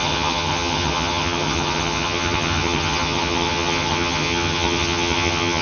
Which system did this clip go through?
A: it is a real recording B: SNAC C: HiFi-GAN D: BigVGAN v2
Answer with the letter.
C